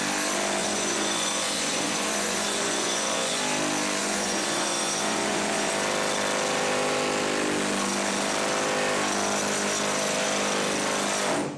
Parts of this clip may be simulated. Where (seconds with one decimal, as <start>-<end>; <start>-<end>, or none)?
0.6-3.4; 4.0-5.7